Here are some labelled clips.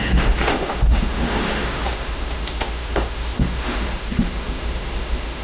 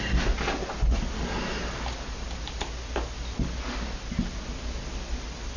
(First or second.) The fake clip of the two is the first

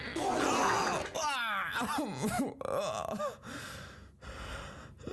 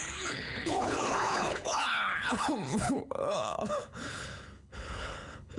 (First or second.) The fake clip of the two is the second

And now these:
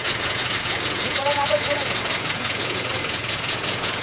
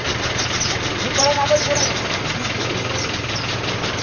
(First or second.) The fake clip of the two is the first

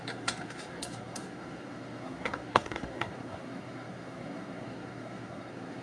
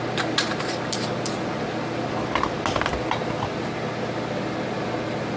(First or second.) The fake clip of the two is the first